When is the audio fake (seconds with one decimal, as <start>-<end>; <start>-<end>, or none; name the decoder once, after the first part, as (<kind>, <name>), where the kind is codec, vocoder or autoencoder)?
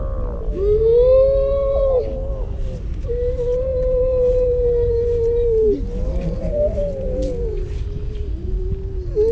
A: 8.0-8.6 (vocoder, BigVGAN v2)